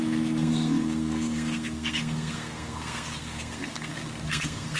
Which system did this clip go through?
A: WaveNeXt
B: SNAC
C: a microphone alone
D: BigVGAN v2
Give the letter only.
B